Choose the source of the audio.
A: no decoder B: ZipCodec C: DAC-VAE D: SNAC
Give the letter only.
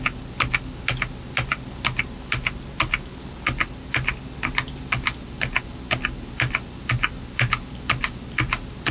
A